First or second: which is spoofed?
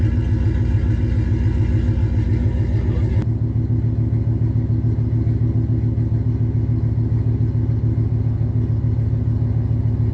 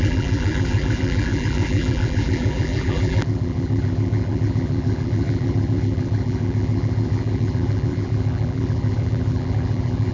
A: second